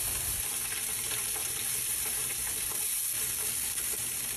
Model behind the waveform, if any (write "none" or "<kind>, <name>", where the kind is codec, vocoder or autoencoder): vocoder, BigVGAN v2